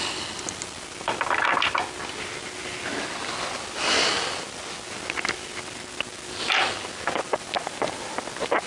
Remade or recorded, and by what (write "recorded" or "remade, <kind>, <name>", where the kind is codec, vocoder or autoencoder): recorded